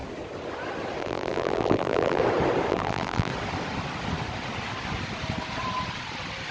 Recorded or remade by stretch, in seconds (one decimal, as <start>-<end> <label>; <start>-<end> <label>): 0.0-1.0 recorded; 1.0-2.2 remade; 2.2-2.7 recorded; 2.7-3.3 remade; 3.3-6.5 recorded